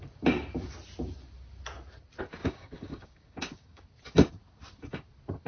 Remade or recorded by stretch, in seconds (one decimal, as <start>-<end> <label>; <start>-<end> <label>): 0.0-2.4 recorded; 2.4-3.8 remade; 3.8-5.5 recorded